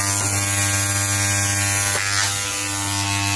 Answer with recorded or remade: recorded